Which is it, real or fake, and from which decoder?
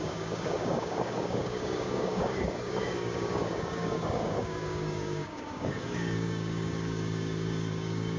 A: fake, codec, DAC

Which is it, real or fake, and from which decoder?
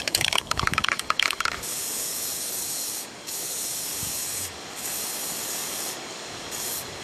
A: fake, codec, DAC